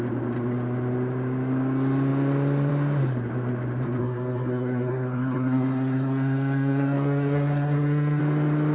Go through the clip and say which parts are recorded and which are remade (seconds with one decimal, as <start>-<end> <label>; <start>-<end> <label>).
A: 0.0-4.0 recorded; 4.0-8.2 remade; 8.2-8.7 recorded